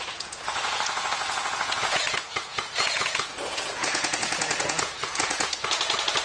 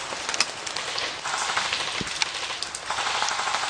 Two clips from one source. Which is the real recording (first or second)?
second